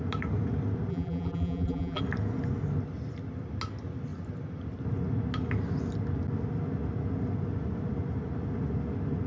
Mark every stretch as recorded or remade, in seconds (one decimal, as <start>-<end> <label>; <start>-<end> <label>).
0.0-0.9 recorded; 0.9-2.0 remade; 2.0-9.3 recorded